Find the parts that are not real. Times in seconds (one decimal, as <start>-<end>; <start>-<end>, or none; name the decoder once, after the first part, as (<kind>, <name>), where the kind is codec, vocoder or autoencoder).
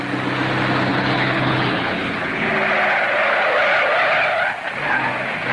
0.9-2.5 (codec, HILCodec)